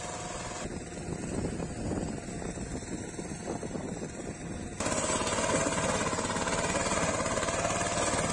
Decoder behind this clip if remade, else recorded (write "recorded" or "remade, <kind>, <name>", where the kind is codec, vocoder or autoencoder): recorded